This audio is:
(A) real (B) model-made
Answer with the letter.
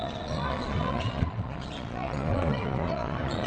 B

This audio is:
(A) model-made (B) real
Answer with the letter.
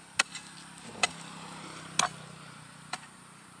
B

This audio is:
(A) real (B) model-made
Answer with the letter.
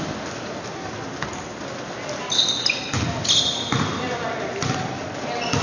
A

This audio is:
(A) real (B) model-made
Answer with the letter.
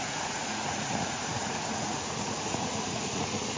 B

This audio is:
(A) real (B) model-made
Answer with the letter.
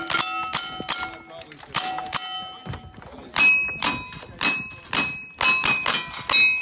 A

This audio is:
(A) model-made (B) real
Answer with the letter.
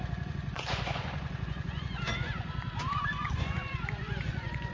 A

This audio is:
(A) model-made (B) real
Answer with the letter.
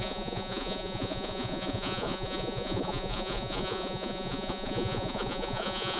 A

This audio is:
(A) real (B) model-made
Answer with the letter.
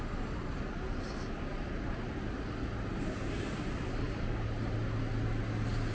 A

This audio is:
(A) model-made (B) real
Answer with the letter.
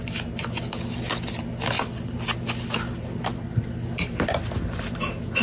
B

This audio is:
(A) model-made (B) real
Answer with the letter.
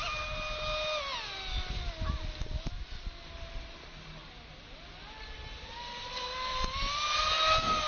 B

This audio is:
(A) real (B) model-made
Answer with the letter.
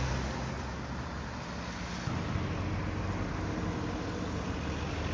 A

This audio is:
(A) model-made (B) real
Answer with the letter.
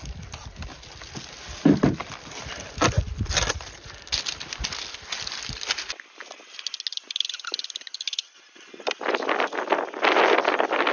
B